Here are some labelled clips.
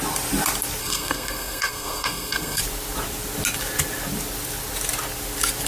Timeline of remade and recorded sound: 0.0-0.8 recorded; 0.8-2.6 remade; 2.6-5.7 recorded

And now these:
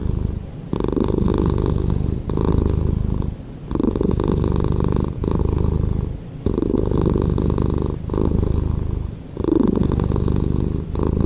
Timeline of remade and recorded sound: 0.0-11.3 recorded

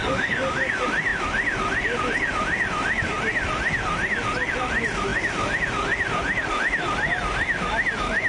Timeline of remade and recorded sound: 0.0-0.7 remade; 0.7-8.3 recorded

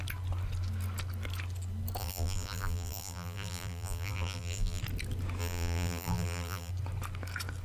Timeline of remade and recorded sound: 0.0-2.0 recorded; 2.0-4.8 remade; 4.8-5.4 recorded; 5.4-6.7 remade; 6.7-7.6 recorded

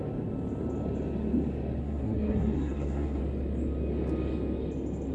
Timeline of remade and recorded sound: 0.0-1.8 recorded; 1.8-3.2 remade; 3.2-5.1 recorded

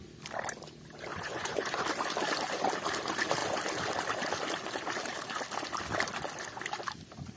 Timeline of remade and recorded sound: 0.0-1.1 recorded; 1.1-1.8 remade; 1.8-7.4 recorded